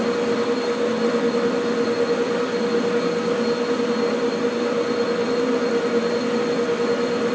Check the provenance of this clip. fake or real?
real